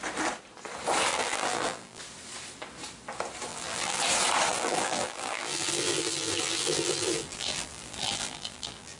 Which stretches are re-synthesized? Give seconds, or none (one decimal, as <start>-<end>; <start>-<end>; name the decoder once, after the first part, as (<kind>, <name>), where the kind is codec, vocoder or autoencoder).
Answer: 1.1-2.0 (vocoder, BigVGAN v2); 3.5-4.0; 4.5-9.0